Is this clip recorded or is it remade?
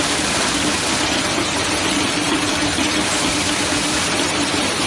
recorded